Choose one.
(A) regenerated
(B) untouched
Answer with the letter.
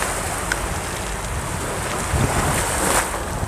B